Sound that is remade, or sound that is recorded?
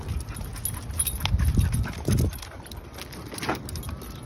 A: recorded